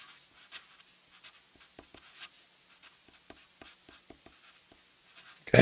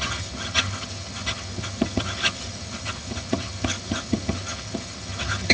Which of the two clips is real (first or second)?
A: first